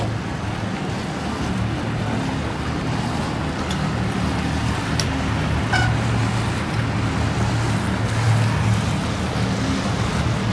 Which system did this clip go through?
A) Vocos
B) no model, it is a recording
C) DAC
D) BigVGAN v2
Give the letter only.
B